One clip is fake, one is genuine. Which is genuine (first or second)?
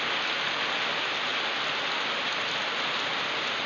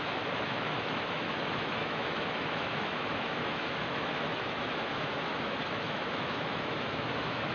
first